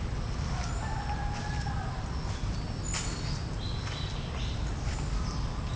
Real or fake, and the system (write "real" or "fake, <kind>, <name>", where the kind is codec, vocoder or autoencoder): real